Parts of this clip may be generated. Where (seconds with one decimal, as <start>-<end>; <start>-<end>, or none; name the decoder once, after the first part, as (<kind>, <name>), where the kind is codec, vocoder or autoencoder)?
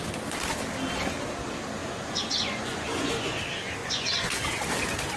1.8-3.4 (vocoder, Vocos); 3.8-4.4